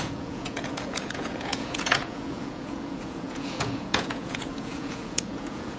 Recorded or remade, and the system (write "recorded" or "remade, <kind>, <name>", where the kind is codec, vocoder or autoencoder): remade, vocoder, Vocos